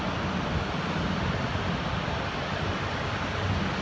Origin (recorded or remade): recorded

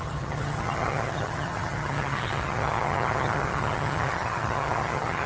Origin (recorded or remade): remade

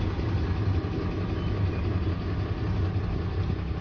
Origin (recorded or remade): recorded